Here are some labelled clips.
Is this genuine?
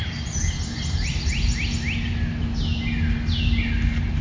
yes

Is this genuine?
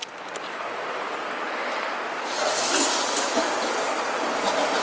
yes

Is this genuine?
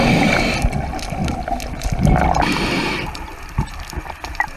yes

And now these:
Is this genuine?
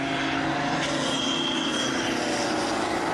yes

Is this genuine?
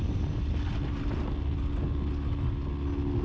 yes